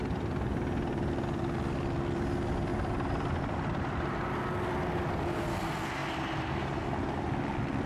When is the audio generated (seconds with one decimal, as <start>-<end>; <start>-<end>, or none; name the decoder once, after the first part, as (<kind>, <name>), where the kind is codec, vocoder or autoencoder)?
none